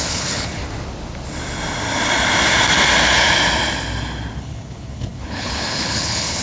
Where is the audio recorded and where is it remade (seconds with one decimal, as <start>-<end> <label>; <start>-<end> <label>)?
0.0-0.6 remade; 0.6-4.4 recorded; 4.4-6.4 remade